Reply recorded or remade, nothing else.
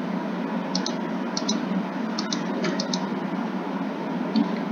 recorded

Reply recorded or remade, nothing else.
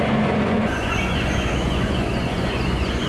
remade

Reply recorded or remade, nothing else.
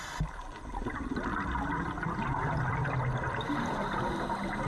recorded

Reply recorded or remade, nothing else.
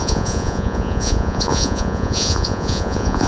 remade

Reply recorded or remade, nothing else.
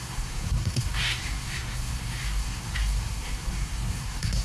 remade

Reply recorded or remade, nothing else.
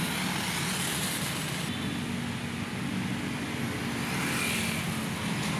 recorded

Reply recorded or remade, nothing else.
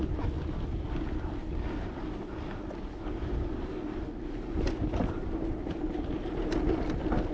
recorded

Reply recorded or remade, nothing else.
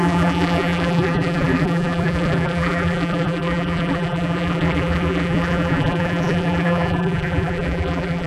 remade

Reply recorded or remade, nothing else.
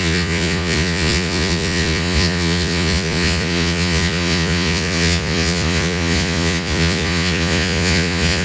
remade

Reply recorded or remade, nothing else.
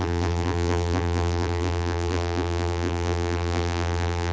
remade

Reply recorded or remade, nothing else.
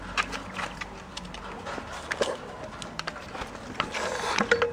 recorded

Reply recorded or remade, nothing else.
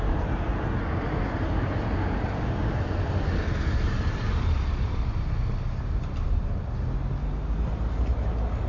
recorded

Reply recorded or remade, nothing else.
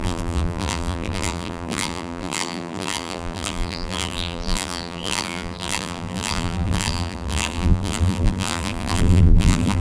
remade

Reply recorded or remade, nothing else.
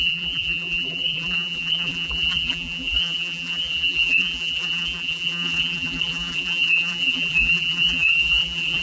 remade